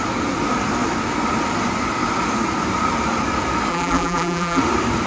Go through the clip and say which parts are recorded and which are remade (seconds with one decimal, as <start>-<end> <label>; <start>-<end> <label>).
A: 0.0-3.7 recorded; 3.7-4.6 remade; 4.6-5.1 recorded